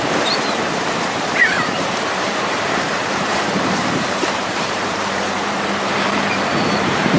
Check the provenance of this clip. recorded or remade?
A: remade